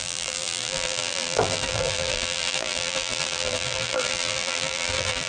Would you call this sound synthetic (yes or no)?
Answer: yes